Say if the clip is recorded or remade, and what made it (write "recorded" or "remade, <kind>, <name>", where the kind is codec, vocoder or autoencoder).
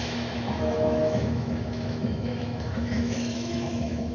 remade, autoencoder, DAC-VAE